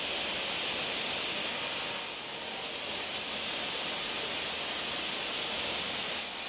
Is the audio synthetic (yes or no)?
no